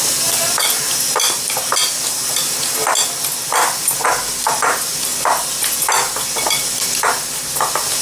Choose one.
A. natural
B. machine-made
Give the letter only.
A